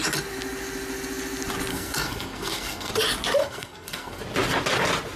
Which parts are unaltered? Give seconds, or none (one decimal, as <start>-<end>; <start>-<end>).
0.0-1.7; 2.9-3.4; 4.2-5.2